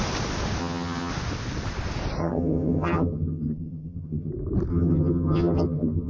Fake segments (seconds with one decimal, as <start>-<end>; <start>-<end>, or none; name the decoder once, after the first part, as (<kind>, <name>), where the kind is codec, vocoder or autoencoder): 0.6-1.1 (vocoder, HiFi-GAN); 2.2-4.3; 4.7-6.1